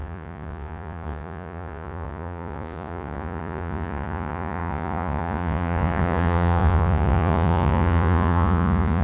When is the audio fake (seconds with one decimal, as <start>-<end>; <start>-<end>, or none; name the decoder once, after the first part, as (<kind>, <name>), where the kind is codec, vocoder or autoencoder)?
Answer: 0.0-9.0 (vocoder, Vocos)